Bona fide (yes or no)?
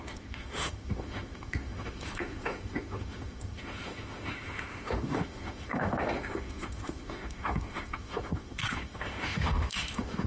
no